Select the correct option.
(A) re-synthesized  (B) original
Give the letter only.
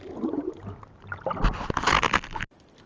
B